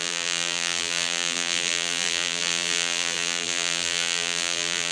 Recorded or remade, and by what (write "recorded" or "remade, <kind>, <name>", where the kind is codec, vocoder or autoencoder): remade, vocoder, BigVGAN v2